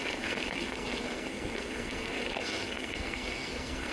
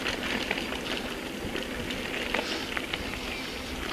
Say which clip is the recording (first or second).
second